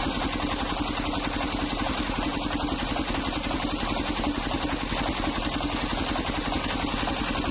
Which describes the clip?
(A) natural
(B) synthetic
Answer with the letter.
A